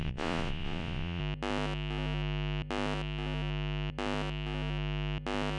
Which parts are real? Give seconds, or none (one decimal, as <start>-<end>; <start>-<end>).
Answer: 1.2-5.6